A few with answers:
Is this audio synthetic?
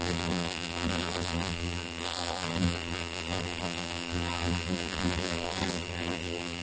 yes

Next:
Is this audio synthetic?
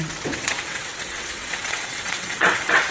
yes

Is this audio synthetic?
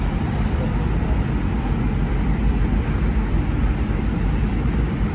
no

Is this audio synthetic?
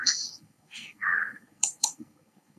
yes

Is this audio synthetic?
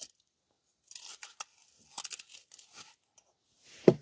no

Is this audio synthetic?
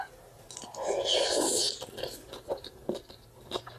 no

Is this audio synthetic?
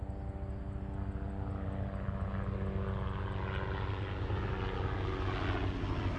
no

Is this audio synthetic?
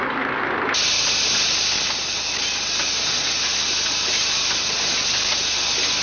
no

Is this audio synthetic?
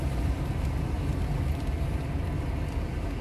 no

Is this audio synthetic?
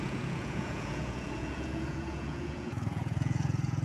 yes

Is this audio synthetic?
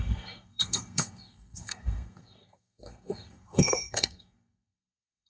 yes